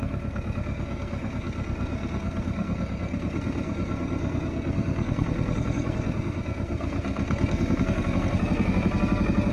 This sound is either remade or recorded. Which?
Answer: remade